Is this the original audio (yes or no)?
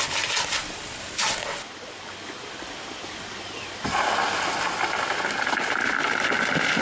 yes